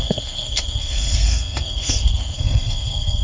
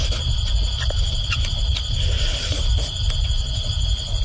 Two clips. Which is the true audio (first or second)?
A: second